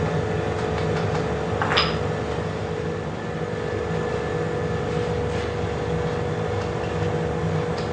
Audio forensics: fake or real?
real